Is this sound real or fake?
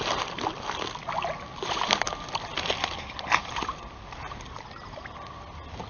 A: real